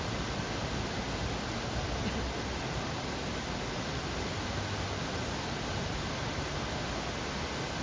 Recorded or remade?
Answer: recorded